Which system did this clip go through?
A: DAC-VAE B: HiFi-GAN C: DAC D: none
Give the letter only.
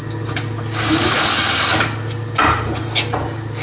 D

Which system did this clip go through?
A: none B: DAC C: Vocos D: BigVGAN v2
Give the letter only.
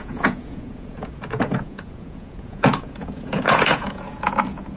C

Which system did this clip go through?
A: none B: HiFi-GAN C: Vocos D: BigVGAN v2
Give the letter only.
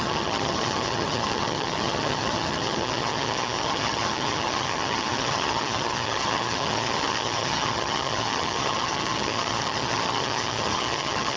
B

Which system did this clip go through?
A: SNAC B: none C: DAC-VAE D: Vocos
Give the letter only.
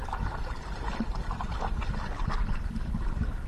B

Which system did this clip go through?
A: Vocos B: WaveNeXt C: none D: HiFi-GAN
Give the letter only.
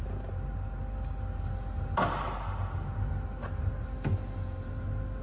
C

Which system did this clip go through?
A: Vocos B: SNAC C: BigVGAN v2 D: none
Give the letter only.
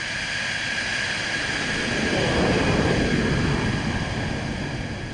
D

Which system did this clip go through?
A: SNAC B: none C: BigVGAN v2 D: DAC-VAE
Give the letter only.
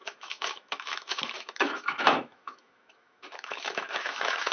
D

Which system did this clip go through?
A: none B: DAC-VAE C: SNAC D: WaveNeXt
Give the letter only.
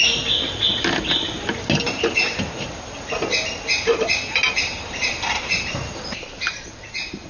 A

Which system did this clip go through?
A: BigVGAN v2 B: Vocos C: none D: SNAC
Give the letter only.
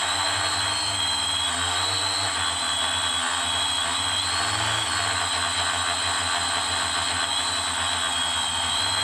C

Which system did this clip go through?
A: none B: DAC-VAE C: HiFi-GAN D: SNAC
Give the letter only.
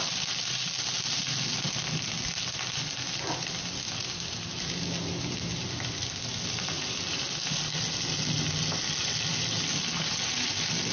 A